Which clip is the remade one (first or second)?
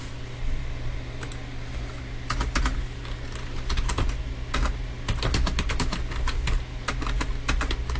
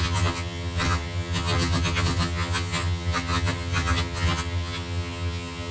second